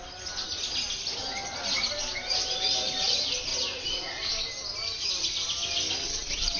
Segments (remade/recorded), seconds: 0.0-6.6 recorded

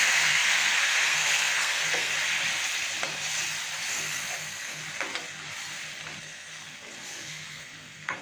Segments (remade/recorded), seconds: 0.0-2.1 remade; 2.1-3.9 recorded; 3.9-4.8 remade; 4.8-6.2 recorded; 6.2-8.2 remade

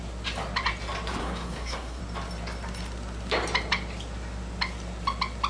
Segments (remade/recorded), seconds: 0.0-1.2 recorded; 1.2-2.0 remade; 2.0-5.5 recorded

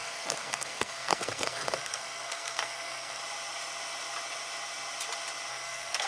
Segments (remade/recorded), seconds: 0.0-3.2 remade; 3.2-5.5 recorded; 5.5-6.1 remade

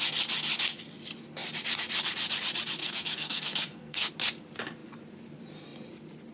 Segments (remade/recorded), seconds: 0.0-2.8 recorded; 2.8-4.1 remade; 4.1-6.3 recorded

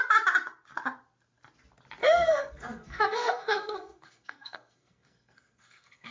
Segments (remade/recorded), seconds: 0.0-2.0 recorded; 2.0-6.1 remade